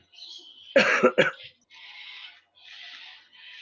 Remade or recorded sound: recorded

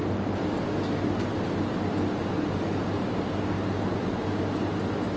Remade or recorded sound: recorded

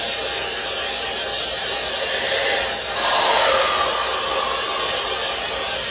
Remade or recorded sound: recorded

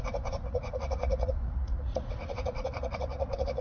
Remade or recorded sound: remade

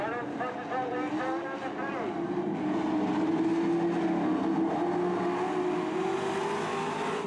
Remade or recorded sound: recorded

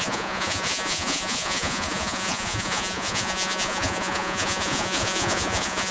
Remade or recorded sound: remade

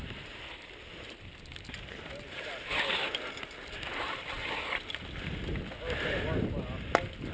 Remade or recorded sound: recorded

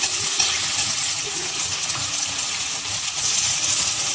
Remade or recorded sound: remade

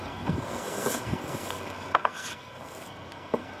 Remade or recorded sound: remade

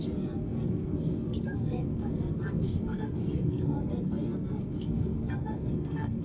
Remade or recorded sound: remade